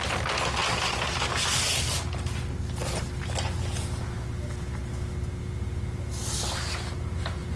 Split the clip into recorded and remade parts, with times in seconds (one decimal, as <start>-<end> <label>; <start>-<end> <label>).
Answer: 0.0-7.6 recorded